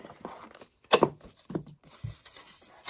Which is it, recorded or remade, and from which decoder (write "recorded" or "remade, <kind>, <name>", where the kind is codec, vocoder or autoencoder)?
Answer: recorded